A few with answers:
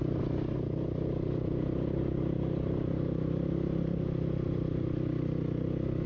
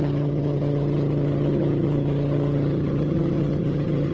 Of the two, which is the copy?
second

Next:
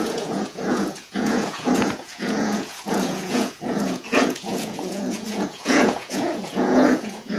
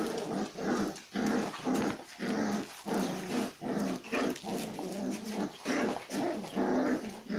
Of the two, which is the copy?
first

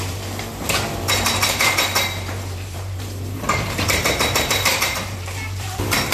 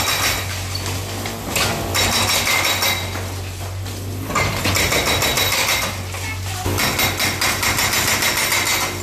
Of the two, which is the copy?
first